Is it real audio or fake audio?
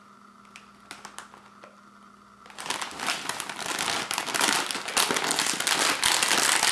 real